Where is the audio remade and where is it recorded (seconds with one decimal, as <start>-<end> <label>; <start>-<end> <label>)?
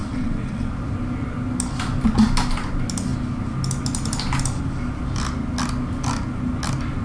0.0-0.7 remade; 0.7-7.0 recorded